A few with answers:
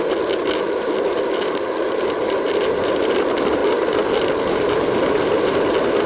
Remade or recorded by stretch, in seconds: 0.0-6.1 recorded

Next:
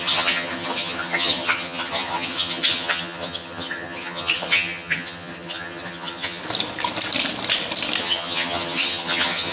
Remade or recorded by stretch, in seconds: 0.0-6.4 remade; 6.4-8.0 recorded; 8.0-9.5 remade

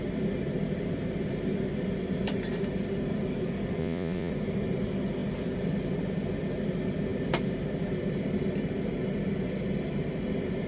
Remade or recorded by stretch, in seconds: 0.0-3.8 recorded; 3.8-4.3 remade; 4.3-10.7 recorded

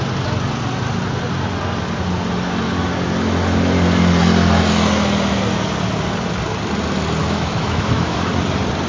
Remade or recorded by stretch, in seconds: 0.0-7.2 recorded; 7.2-8.3 remade; 8.3-8.9 recorded

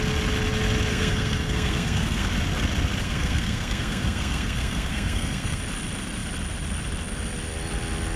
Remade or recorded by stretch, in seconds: 0.0-0.9 recorded; 0.9-2.3 remade; 2.3-3.0 recorded; 3.0-5.6 remade; 5.6-8.2 recorded

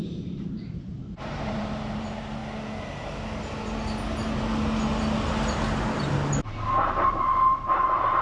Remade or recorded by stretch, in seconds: 0.0-2.4 remade; 2.4-7.1 recorded; 7.1-8.2 remade

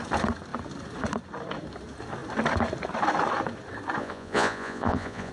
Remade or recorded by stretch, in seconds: 0.0-4.0 recorded; 4.0-5.3 remade